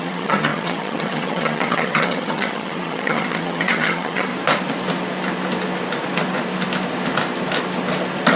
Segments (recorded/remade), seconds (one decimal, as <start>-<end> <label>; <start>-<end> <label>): 0.0-4.3 remade; 4.3-8.4 recorded